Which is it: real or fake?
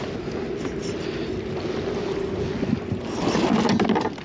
real